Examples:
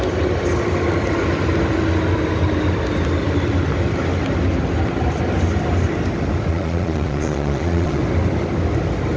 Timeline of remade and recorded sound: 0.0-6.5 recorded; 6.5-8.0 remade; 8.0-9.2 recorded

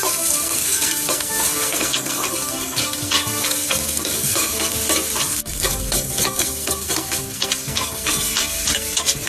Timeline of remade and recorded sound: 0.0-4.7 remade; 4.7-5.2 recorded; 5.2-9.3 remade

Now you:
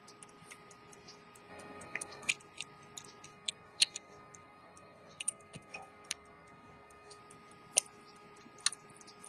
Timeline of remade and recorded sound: 0.0-1.5 recorded; 1.5-2.3 remade; 2.3-3.3 recorded; 3.3-7.2 remade; 7.2-9.3 recorded

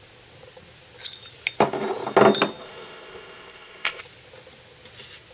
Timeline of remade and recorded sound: 0.0-2.6 recorded; 2.6-4.0 remade; 4.0-5.3 recorded